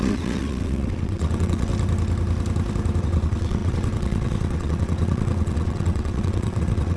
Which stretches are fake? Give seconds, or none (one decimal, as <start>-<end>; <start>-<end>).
0.0-1.7; 3.0-7.0